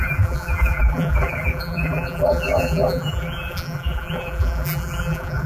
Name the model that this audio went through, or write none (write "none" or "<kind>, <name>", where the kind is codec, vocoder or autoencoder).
vocoder, BigVGAN v2